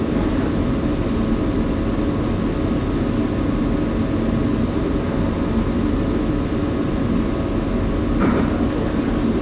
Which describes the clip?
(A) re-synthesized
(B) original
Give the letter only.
B